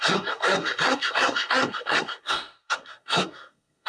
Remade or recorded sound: remade